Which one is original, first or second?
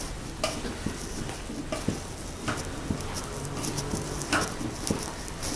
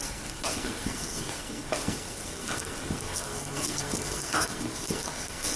first